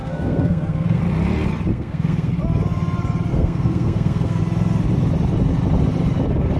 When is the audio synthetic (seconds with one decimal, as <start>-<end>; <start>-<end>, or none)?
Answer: 0.0-1.0; 1.7-2.3; 3.3-4.4